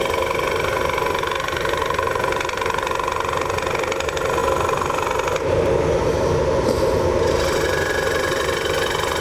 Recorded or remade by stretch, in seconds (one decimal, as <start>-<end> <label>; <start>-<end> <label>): 0.0-9.2 recorded